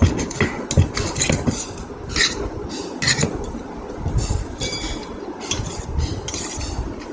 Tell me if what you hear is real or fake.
real